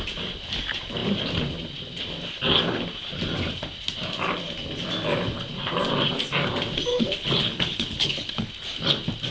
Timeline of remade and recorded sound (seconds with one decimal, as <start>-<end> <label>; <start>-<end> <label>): 0.0-6.9 recorded; 6.9-8.5 remade; 8.5-9.3 recorded